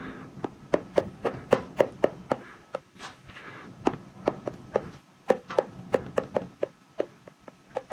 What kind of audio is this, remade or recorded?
recorded